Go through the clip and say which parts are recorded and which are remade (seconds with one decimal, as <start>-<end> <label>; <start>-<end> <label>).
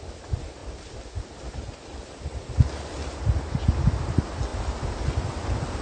0.0-5.8 recorded